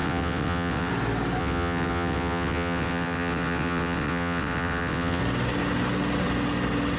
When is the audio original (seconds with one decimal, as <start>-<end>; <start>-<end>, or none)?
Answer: 0.9-1.4; 5.2-7.0

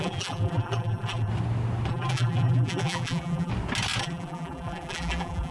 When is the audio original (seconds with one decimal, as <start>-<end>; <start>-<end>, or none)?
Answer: 1.3-1.9; 3.5-4.0

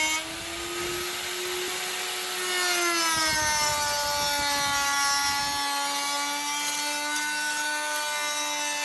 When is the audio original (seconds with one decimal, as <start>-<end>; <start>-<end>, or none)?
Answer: 0.0-8.8

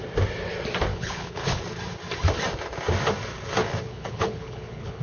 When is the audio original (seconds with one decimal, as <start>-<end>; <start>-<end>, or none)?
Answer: 0.0-0.9; 1.6-3.9

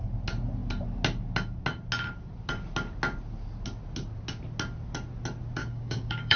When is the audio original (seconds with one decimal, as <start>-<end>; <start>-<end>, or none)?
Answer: 0.0-5.6

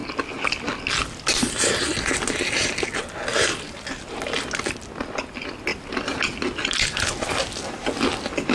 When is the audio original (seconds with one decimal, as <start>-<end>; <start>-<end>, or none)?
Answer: 0.0-8.5

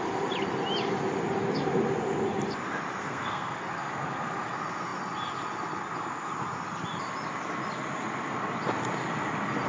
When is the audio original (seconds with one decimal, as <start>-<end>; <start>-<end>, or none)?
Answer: 0.0-3.0; 3.7-9.7

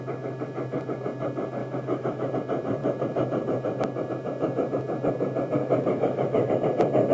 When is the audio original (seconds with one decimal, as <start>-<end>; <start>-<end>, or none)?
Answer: 0.0-1.6; 2.3-5.6; 6.5-7.1